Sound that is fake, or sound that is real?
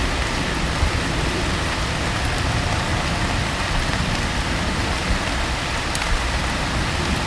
real